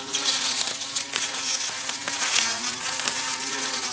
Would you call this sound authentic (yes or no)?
no